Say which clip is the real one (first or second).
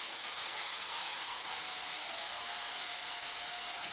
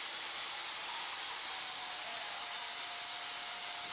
second